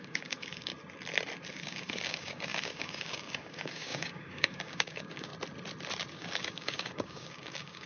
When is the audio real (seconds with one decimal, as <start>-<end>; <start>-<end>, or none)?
0.7-1.5; 5.3-6.1